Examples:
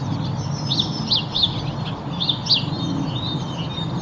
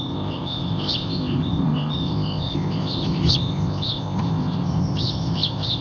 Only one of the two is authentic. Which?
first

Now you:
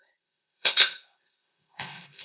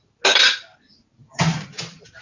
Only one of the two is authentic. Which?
second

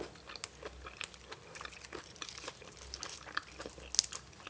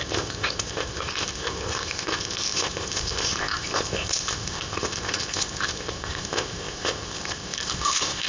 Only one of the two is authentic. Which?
first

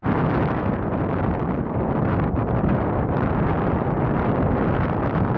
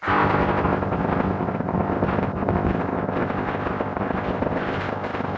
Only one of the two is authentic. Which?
first